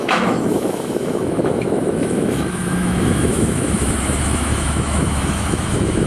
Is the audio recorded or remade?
remade